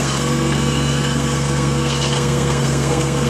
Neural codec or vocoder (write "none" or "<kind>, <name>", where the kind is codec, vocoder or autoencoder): codec, SNAC